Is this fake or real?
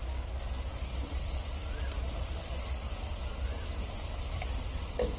real